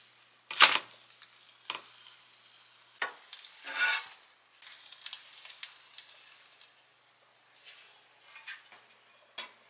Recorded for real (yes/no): yes